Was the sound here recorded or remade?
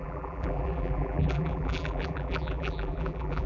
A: remade